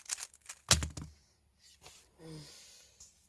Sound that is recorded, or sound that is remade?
recorded